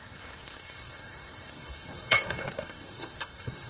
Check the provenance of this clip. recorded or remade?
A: remade